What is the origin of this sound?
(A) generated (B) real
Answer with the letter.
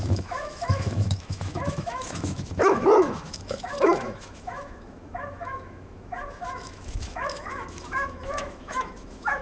A